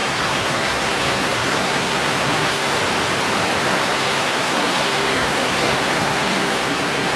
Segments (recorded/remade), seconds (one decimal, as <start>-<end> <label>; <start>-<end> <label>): 0.0-2.8 remade; 2.8-3.6 recorded; 3.6-7.2 remade